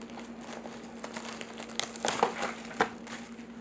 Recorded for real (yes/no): yes